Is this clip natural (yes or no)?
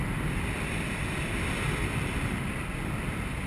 yes